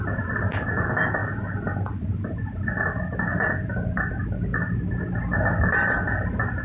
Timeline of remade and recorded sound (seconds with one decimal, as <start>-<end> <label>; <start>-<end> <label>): 0.0-6.6 recorded